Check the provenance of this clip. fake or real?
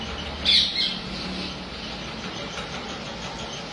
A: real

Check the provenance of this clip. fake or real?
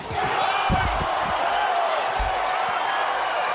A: real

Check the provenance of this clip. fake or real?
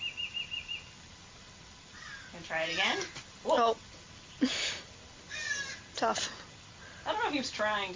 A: real